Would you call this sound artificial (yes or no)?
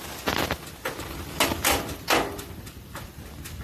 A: no